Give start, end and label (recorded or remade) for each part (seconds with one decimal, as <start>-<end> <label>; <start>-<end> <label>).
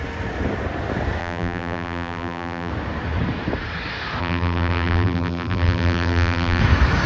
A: 0.0-1.2 recorded; 1.2-2.7 remade; 2.7-4.2 recorded; 4.2-6.6 remade; 6.6-7.1 recorded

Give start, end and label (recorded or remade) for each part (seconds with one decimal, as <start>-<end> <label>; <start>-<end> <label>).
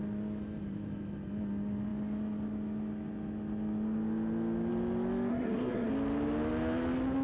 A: 0.0-5.3 recorded; 5.3-5.9 remade; 5.9-7.2 recorded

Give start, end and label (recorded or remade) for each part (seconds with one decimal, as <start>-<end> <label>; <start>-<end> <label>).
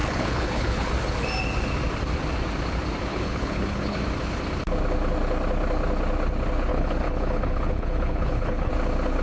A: 0.0-0.9 remade; 0.9-3.1 recorded; 3.1-4.0 remade; 4.0-6.7 recorded; 6.7-8.7 remade; 8.7-9.2 recorded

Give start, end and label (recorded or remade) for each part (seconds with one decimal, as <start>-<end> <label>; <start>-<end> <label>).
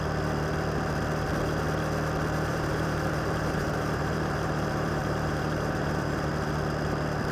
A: 0.0-2.5 recorded; 2.5-6.3 remade; 6.3-7.3 recorded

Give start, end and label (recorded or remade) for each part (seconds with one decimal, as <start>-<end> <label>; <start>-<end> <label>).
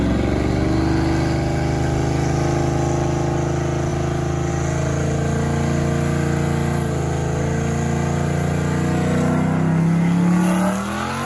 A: 0.0-11.3 recorded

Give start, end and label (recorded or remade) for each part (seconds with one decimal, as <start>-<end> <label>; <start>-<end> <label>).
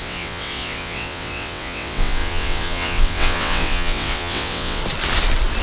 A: 0.0-4.8 remade; 4.8-5.6 recorded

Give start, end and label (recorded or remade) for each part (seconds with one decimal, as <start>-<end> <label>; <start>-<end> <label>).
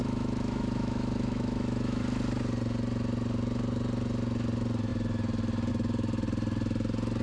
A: 0.0-2.0 remade; 2.0-7.2 recorded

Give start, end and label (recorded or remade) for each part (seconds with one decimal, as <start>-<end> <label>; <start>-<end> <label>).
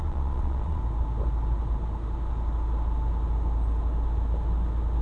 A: 0.0-0.8 remade; 0.8-5.0 recorded